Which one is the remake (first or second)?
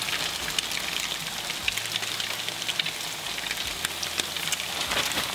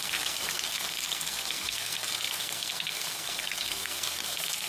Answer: second